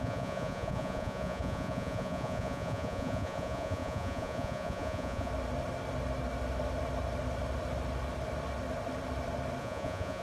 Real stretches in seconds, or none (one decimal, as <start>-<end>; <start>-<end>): 5.3-9.6